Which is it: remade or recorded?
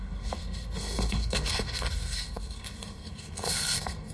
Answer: remade